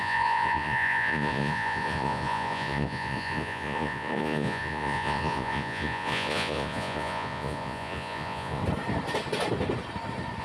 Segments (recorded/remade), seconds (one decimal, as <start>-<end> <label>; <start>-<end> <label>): 0.0-8.6 remade; 8.6-10.4 recorded